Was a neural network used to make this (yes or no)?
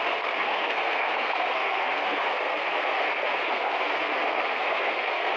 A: yes